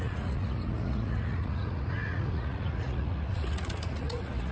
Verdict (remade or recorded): remade